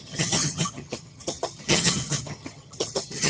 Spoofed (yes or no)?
yes